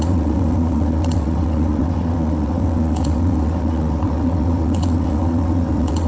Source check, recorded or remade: remade